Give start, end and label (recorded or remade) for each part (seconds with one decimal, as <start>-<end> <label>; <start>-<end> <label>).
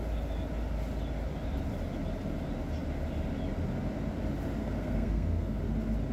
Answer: 0.0-4.6 recorded; 4.6-5.6 remade; 5.6-6.1 recorded